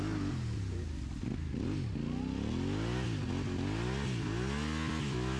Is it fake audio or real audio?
real